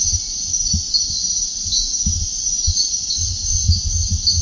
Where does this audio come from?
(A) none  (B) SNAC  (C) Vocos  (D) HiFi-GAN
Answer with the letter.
A